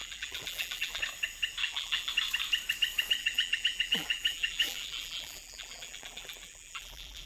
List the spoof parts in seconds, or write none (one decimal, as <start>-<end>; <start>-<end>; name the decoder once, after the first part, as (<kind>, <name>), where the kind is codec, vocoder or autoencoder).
0.0-1.0 (vocoder, BigVGAN v2); 1.6-2.1; 3.2-7.3